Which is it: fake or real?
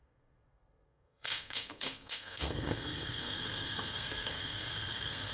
fake